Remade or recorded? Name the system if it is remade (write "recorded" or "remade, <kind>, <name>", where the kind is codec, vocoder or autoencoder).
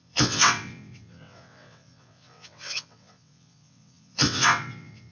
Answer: remade, vocoder, WaveNeXt